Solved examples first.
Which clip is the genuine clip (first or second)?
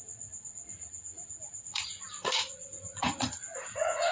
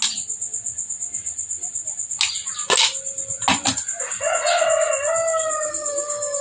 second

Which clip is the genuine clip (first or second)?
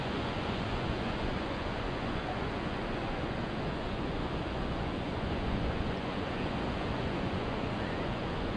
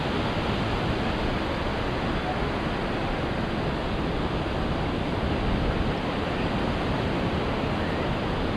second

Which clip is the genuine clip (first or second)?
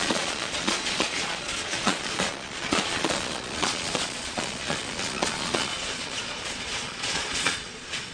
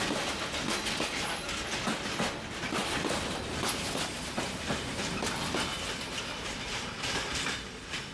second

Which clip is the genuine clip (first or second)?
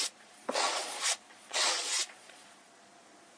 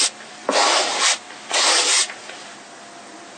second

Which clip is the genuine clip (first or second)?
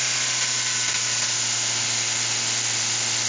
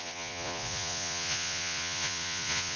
first